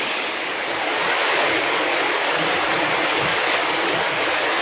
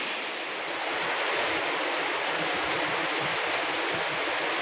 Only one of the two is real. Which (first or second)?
second